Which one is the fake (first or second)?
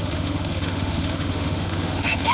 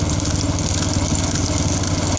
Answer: first